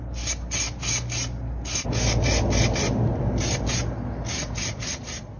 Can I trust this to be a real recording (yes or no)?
yes